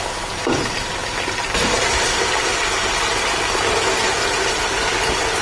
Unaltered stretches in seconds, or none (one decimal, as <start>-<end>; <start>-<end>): 0.0-5.4